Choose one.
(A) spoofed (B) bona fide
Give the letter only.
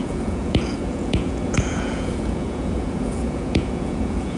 A